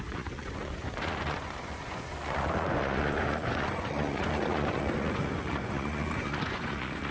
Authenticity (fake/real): fake